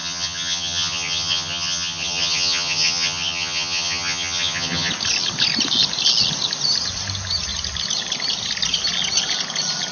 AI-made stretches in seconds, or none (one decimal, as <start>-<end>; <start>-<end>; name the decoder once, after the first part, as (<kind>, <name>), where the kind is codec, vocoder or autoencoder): 0.0-4.9 (vocoder, HiFi-GAN)

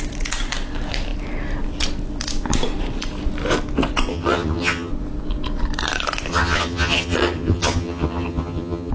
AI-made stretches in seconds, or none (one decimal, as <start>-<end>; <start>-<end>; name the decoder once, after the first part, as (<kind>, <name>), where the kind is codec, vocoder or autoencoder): 4.1-4.9 (vocoder, HiFi-GAN); 6.3-8.9

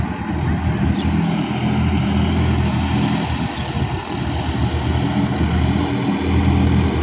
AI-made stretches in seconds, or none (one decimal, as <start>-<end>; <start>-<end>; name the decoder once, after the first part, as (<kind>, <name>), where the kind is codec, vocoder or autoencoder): none

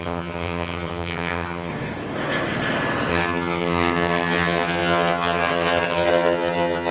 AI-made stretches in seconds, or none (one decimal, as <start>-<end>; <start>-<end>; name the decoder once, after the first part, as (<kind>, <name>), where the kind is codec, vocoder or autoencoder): 0.0-1.7 (vocoder, HiFi-GAN); 3.1-6.9